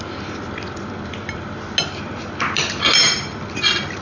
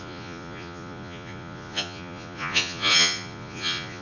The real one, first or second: first